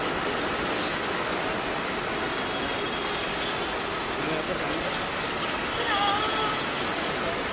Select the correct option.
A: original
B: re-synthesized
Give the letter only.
A